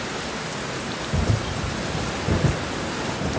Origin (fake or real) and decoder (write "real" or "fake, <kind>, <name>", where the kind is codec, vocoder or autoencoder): real